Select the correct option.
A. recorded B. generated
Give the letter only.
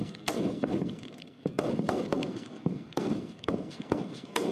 B